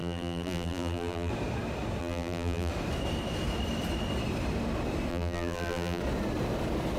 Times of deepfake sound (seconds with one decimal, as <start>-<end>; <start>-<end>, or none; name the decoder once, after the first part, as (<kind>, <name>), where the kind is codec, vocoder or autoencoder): 0.0-1.3 (vocoder, BigVGAN v2); 2.0-2.7; 5.1-6.0